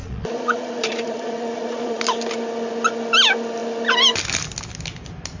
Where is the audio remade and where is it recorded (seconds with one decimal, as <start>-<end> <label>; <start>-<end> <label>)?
0.0-2.0 remade; 2.0-5.4 recorded